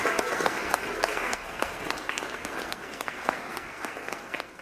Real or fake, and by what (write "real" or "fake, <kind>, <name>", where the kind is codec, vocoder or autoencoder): fake, codec, SNAC